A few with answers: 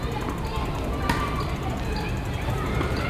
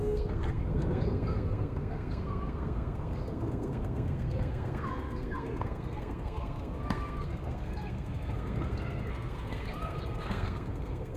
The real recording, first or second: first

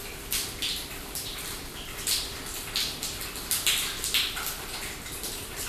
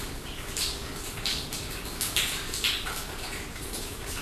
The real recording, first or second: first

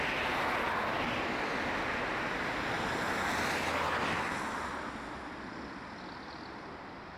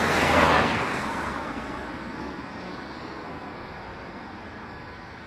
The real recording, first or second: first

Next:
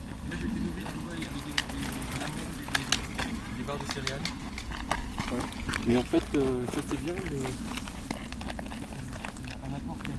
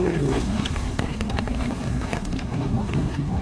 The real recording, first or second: first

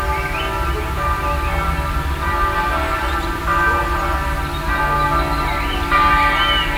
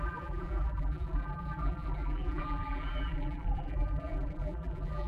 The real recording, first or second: first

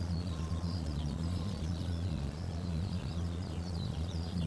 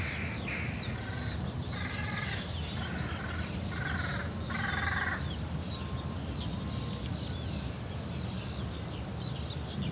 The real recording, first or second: second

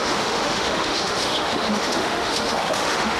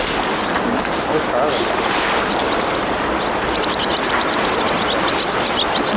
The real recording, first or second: second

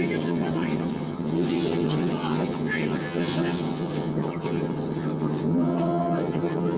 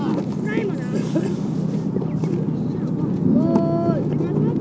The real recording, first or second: second